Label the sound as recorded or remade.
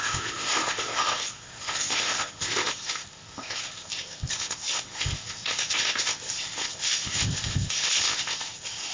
remade